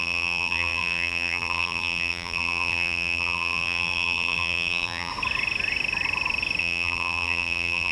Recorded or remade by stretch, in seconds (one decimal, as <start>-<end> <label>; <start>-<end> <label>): 0.0-5.1 remade; 5.1-6.6 recorded; 6.6-7.9 remade